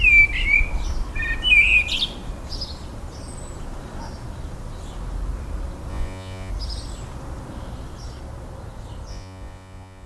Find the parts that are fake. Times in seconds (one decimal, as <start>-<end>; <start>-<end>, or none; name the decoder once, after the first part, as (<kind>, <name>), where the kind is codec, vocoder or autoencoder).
5.9-6.5 (vocoder, Vocos); 9.1-10.1